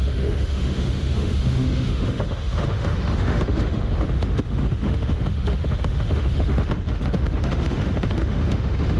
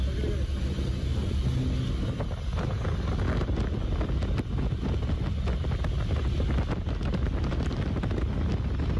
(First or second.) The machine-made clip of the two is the first